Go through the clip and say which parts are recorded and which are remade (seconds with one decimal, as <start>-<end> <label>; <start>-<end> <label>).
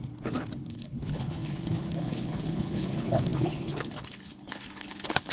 0.0-5.3 remade